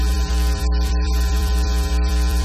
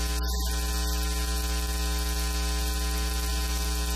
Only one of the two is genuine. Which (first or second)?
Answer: second